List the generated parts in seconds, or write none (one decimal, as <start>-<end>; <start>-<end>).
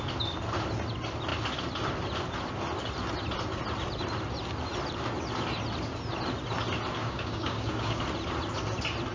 7.0-8.0